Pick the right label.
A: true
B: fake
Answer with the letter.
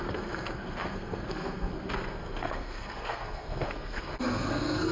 B